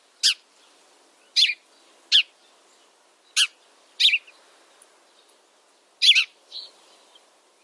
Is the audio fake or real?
real